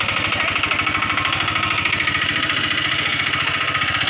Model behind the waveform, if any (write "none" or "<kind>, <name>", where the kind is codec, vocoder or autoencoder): none